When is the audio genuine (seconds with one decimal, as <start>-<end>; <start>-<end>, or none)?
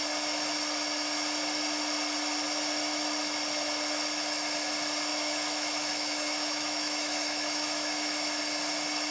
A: 0.0-5.1; 8.4-9.1